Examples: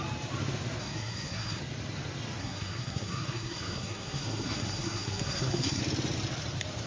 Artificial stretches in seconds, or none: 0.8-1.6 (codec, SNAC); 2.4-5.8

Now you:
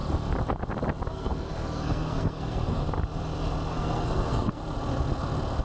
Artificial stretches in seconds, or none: 1.1-2.8 (codec, SNAC); 3.7-4.6

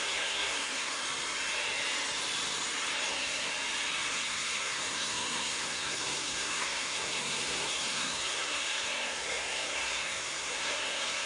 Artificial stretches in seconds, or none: 0.0-1.0 (codec, SNAC); 3.1-3.5; 4.1-11.3

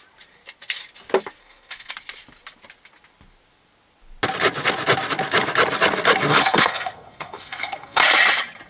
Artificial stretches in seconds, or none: 1.4-1.9 (codec, SNAC); 6.3-8.0

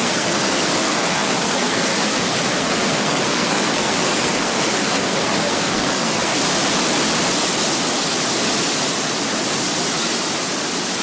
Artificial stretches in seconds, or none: 0.0-6.3 (codec, SNAC)

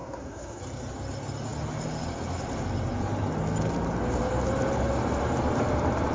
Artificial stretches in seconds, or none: 0.0-0.6 (codec, SNAC)